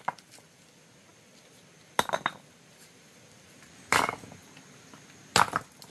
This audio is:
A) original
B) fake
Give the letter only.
A